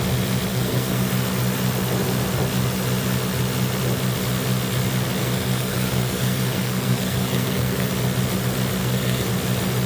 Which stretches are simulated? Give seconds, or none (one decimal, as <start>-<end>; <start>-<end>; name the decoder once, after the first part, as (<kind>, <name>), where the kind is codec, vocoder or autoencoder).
0.5-1.1 (codec, SNAC); 5.2-7.9; 8.8-9.3